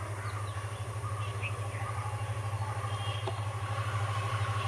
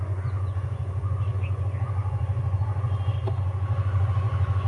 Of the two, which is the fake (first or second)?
second